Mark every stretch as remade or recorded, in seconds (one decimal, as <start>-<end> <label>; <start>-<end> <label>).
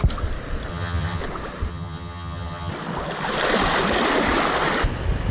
0.0-0.7 recorded; 0.7-1.2 remade; 1.2-1.7 recorded; 1.7-2.7 remade; 2.7-5.3 recorded